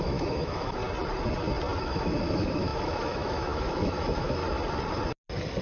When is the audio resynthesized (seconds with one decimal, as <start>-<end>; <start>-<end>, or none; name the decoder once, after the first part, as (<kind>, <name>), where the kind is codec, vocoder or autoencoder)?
0.0-0.8 (autoencoder, DAC-VAE); 1.8-4.4